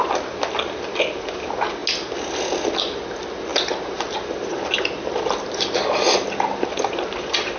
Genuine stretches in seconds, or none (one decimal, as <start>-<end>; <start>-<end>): 1.8-2.6